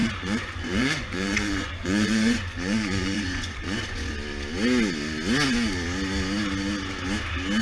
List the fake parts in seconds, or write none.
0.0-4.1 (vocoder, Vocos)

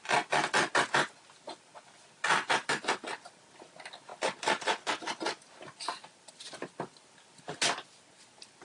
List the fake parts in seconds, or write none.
none

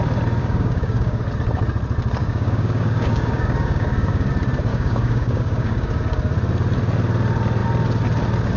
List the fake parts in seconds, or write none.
0.4-1.2 (codec, DAC); 2.2-4.3; 4.7-6.0

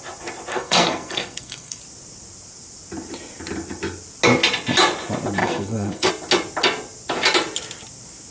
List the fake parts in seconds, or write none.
0.5-1.8 (codec, SNAC); 5.4-6.1

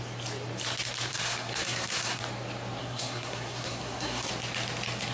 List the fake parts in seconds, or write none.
1.1-2.2 (codec, SNAC); 2.8-4.3